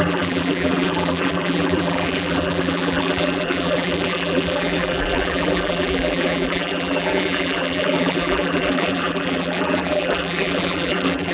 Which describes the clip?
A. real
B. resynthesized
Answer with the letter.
B